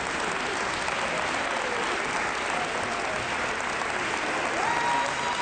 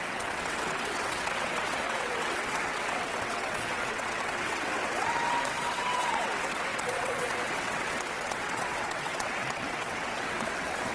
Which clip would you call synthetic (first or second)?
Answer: second